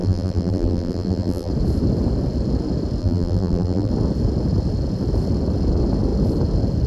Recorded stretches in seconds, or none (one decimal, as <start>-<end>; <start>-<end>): 1.5-3.0; 3.9-6.9